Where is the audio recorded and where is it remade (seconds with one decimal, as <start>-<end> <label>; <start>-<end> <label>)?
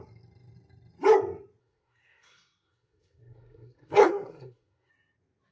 0.0-1.6 recorded; 1.6-4.9 remade; 4.9-5.5 recorded